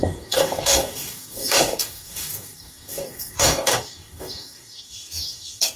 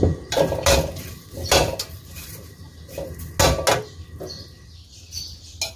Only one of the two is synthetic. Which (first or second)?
first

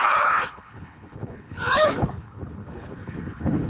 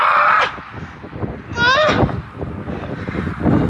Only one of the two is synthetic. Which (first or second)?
first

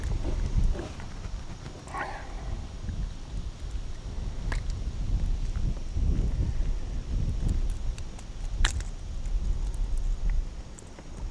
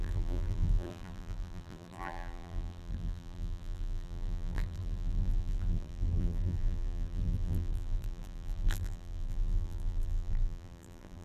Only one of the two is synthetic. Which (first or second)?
second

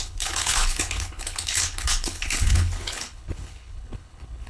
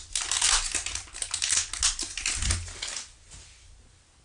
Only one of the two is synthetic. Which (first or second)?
first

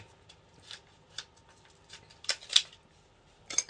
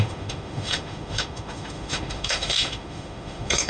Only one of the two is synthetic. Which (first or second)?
second